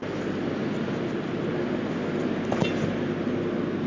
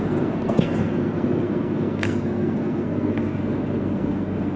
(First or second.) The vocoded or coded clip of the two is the second